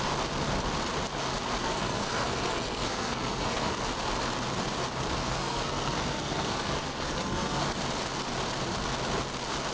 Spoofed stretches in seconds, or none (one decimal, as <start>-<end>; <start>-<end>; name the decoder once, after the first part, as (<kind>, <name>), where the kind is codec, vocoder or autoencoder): 1.6-3.8 (codec, SNAC); 5.2-7.7